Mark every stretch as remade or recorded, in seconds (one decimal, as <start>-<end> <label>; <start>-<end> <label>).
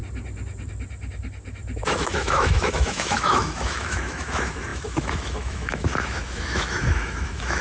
0.0-1.8 recorded; 1.8-7.6 remade